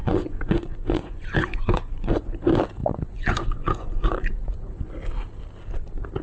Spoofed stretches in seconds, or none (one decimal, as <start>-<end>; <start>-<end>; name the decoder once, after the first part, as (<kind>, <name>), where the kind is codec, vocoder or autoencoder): 0.0-2.4 (vocoder, Vocos); 2.8-4.9